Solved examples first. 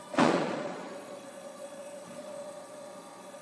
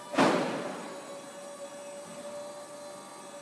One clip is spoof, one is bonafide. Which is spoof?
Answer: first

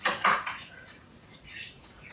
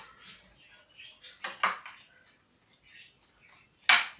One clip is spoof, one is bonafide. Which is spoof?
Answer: first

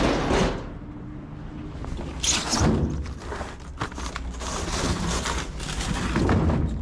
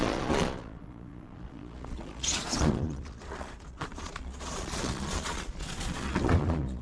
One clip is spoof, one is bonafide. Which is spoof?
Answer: second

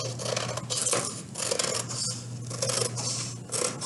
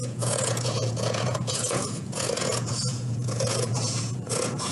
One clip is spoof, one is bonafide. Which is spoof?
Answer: second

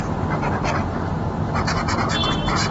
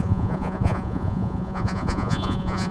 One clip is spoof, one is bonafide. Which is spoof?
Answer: second